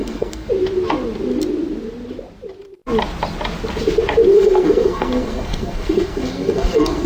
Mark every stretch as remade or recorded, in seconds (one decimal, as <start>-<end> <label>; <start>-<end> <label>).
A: 0.0-0.5 remade; 0.5-4.3 recorded; 4.3-7.1 remade